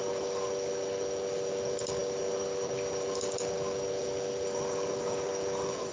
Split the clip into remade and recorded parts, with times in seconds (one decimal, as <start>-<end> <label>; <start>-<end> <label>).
0.0-5.9 recorded